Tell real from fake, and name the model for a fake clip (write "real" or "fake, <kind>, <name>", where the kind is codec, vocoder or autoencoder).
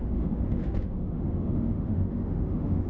fake, autoencoder, DAC-VAE